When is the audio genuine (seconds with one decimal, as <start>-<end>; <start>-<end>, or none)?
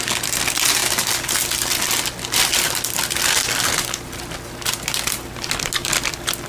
0.0-6.5